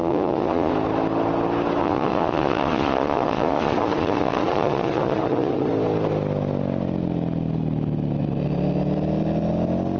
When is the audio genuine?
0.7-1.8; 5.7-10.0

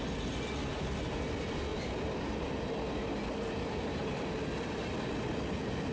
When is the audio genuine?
0.0-5.9

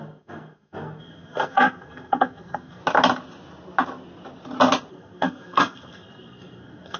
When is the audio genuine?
2.8-4.9